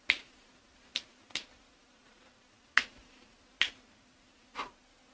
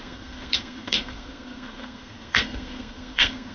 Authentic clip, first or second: first